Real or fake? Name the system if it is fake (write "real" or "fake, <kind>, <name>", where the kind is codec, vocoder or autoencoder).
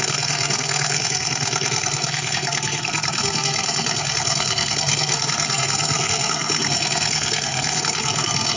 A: fake, codec, SNAC